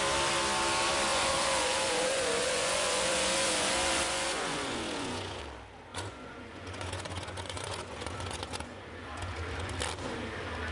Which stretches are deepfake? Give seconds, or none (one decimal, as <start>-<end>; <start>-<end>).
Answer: 1.1-5.4; 5.9-9.7